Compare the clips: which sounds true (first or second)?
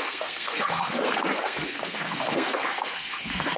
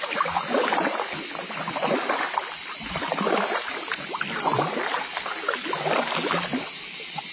second